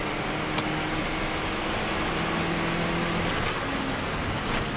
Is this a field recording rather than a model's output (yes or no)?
yes